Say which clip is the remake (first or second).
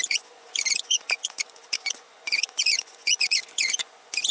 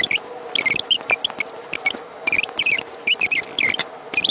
first